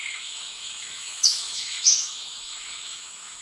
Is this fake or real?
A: fake